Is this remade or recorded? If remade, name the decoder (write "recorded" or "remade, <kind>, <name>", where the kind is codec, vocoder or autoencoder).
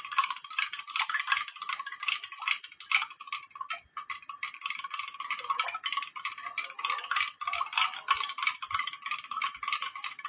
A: recorded